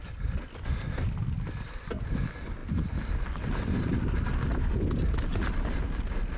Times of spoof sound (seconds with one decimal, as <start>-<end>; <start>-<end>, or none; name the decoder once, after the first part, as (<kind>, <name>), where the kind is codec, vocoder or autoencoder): none